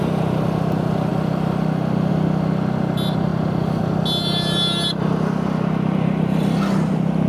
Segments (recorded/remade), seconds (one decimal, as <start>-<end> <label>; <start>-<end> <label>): 0.0-7.3 recorded